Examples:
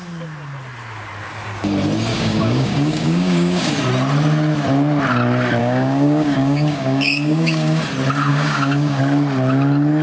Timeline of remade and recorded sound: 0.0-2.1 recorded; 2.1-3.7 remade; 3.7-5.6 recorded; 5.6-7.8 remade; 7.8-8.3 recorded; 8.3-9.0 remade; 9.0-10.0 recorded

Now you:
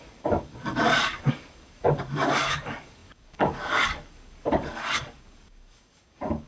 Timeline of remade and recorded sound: 0.0-6.5 remade

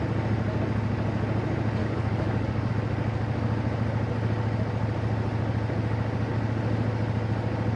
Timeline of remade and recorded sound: 0.0-1.8 recorded; 1.8-2.7 remade; 2.7-7.8 recorded

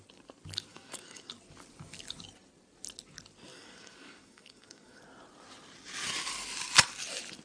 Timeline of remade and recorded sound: 0.0-0.7 recorded; 0.7-1.3 remade; 1.3-3.5 recorded; 3.5-5.0 remade; 5.0-7.4 recorded

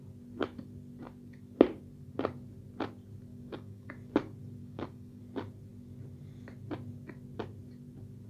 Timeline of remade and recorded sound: 0.0-3.3 recorded; 3.3-3.9 remade; 3.9-4.6 recorded; 4.6-5.2 remade; 5.2-8.3 recorded

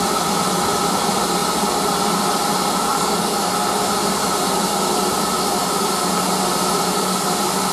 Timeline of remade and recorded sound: 0.0-2.9 recorded; 2.9-3.5 remade; 3.5-7.7 recorded

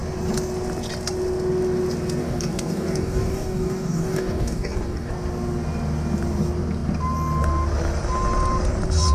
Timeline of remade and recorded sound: 0.0-2.2 recorded; 2.2-5.1 remade; 5.1-9.1 recorded

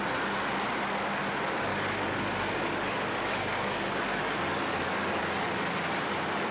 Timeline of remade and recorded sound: 0.0-1.7 recorded; 1.7-5.2 remade; 5.2-6.5 recorded